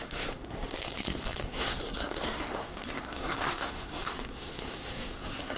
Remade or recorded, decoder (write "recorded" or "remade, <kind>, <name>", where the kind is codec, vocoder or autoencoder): remade, codec, SNAC